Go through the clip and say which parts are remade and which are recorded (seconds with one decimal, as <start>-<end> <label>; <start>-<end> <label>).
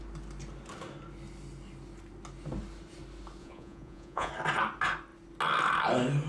0.0-3.4 recorded; 3.4-4.3 remade; 4.3-6.3 recorded